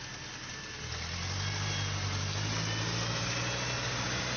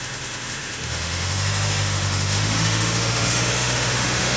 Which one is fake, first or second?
second